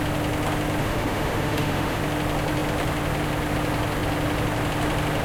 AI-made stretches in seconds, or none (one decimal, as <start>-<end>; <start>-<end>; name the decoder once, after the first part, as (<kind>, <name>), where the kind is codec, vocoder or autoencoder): 0.8-2.0 (autoencoder, DAC-VAE)